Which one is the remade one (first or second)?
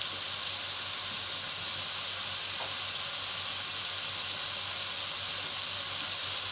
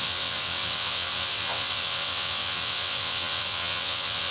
second